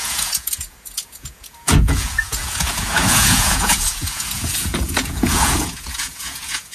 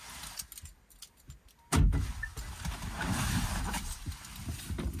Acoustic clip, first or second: second